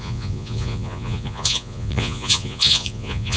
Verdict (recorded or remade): remade